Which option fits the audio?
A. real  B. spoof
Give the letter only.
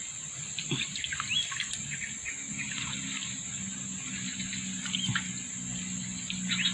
A